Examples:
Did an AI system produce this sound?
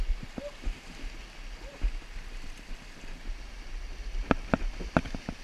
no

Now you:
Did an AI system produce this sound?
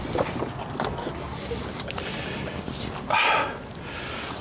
no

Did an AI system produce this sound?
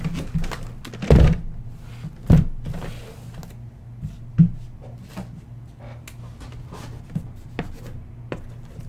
no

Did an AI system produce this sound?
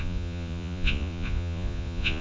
yes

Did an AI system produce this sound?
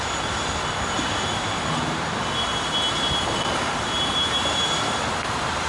yes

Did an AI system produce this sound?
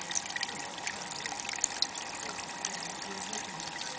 no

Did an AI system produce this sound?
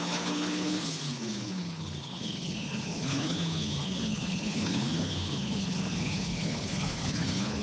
yes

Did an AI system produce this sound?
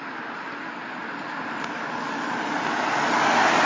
no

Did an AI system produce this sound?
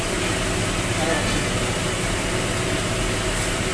no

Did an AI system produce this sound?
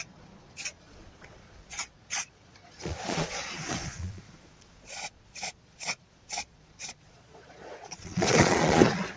yes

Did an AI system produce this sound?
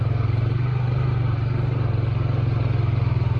no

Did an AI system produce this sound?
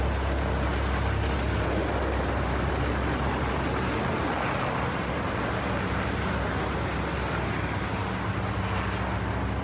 no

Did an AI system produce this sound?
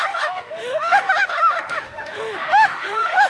yes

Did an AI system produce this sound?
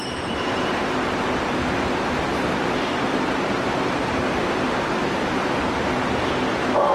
yes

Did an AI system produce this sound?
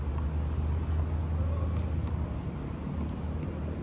no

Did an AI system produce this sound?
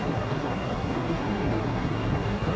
yes